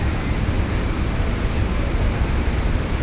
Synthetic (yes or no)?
no